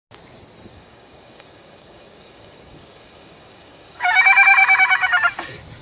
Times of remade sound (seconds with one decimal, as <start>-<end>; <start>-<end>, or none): 0.7-4.2